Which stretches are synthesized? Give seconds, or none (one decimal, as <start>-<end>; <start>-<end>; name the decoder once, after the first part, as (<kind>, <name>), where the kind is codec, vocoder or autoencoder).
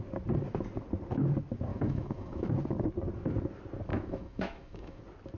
1.7-2.5 (autoencoder, DAC-VAE); 3.9-5.0